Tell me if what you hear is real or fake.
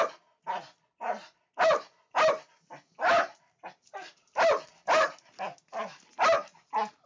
real